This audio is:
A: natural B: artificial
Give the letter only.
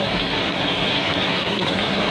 B